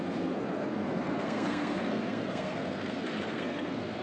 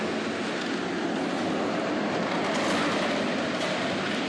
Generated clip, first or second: first